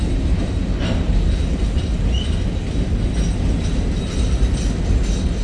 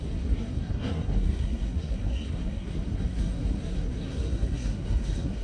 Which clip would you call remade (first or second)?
second